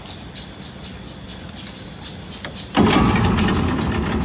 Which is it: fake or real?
real